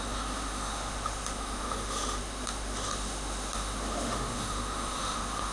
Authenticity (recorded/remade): remade